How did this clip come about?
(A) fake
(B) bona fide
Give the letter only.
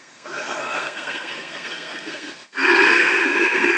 A